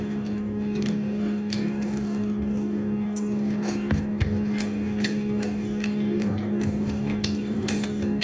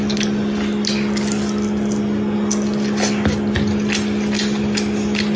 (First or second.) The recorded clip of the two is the second